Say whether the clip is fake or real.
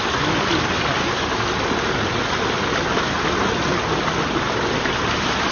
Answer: real